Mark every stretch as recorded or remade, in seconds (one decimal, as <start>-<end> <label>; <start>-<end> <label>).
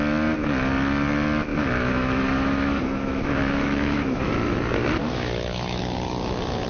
0.0-1.5 recorded; 1.5-4.3 remade; 4.3-5.0 recorded; 5.0-5.8 remade; 5.8-6.7 recorded